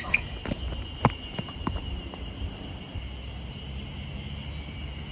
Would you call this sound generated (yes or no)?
no